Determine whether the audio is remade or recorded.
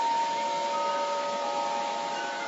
remade